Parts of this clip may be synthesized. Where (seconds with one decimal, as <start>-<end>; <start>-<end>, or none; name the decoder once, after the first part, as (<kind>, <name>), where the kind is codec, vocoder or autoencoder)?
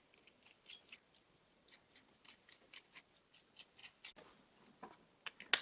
none